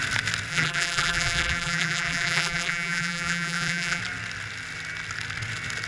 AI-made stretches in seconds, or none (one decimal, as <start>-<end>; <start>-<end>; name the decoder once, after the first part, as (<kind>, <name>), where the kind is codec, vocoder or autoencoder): 0.5-4.0 (vocoder, BigVGAN v2)